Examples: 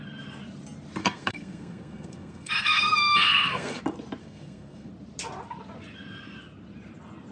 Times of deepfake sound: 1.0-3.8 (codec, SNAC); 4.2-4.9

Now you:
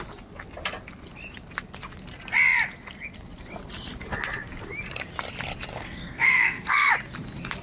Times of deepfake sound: 5.7-6.9 (codec, SNAC)

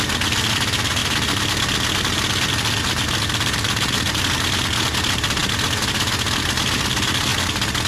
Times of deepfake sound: none

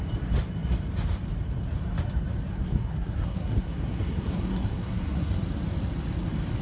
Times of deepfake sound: 2.5-5.3 (codec, SNAC)

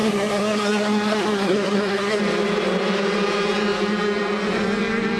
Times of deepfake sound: 0.0-2.2 (codec, SNAC)

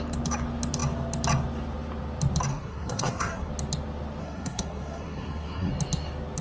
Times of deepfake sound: 2.5-3.5 (codec, SNAC); 4.2-5.7